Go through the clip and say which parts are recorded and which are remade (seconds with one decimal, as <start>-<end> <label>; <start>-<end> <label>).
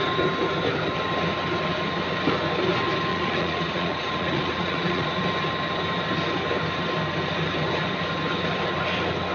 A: 0.0-3.1 recorded; 3.1-5.2 remade; 5.2-9.3 recorded